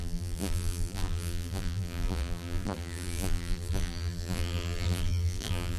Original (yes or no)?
no